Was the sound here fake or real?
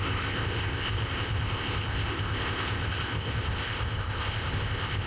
fake